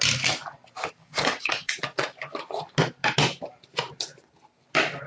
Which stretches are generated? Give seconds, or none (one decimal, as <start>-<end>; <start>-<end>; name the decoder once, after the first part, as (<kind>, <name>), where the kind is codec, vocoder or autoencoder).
1.0-1.8 (codec, DAC)